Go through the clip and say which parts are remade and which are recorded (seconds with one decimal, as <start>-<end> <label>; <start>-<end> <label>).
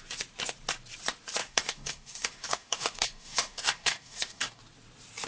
0.0-1.4 recorded; 1.4-4.6 remade; 4.6-5.3 recorded